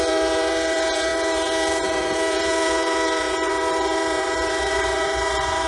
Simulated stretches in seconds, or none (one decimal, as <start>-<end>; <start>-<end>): 0.0-5.7